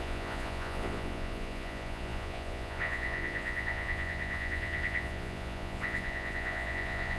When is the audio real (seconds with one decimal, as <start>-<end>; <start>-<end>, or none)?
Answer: none